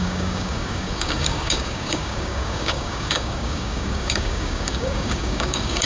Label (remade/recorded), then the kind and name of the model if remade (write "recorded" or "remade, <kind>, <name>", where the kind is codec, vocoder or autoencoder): remade, codec, DAC